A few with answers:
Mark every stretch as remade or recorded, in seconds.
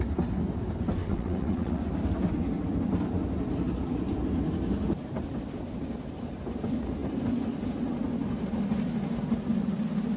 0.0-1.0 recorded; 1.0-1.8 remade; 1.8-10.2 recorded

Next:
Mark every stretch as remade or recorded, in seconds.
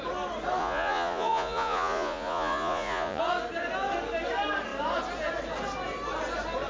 0.0-0.6 recorded; 0.6-3.2 remade; 3.2-6.7 recorded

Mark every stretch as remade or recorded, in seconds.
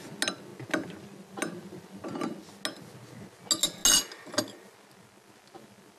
0.0-6.0 recorded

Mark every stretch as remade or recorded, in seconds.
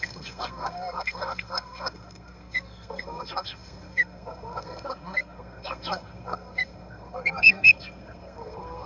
0.0-8.9 remade